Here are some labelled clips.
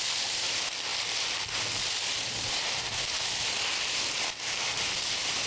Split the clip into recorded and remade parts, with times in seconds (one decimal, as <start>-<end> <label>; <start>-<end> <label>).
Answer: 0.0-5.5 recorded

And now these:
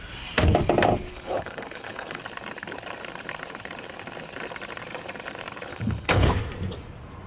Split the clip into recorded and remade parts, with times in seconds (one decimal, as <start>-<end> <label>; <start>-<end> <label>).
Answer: 0.0-1.1 recorded; 1.1-2.2 remade; 2.2-5.7 recorded; 5.7-6.3 remade; 6.3-7.3 recorded

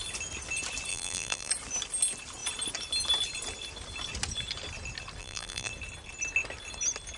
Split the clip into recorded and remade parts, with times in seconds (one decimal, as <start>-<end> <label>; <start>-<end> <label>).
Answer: 0.0-0.9 recorded; 0.9-1.5 remade; 1.5-5.2 recorded; 5.2-5.7 remade; 5.7-7.2 recorded

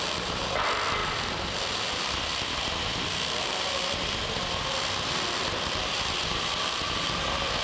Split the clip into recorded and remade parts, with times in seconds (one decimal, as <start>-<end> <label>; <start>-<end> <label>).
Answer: 0.0-1.0 recorded; 1.0-4.1 remade; 4.1-7.6 recorded

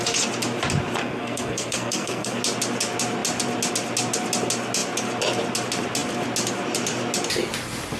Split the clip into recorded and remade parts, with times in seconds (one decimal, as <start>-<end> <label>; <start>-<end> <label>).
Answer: 0.0-1.0 recorded; 1.0-2.4 remade; 2.4-8.0 recorded